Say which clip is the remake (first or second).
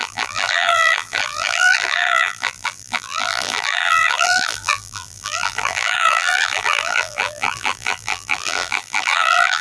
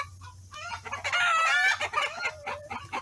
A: first